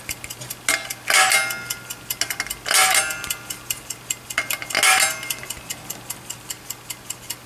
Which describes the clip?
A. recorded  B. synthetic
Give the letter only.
A